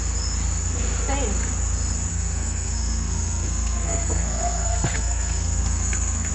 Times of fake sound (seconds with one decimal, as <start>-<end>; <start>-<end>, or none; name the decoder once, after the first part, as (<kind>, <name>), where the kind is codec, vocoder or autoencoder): 2.1-6.3 (codec, SNAC)

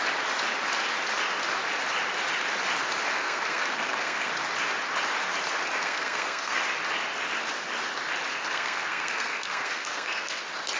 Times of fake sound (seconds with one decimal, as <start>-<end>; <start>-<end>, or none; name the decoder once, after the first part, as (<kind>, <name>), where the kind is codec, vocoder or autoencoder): 3.1-4.3 (codec, SNAC); 5.8-6.6; 8.3-10.4

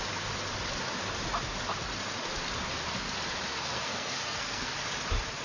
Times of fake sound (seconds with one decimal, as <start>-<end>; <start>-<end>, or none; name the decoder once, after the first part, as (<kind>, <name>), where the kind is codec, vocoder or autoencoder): 3.5-4.7 (codec, SNAC)